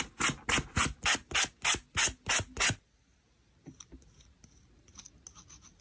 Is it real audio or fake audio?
real